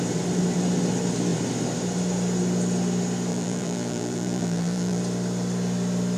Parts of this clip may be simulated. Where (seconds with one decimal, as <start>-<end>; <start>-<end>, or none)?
3.3-5.0